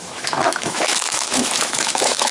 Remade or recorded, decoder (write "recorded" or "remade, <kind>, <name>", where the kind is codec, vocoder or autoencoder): remade, autoencoder, DAC-VAE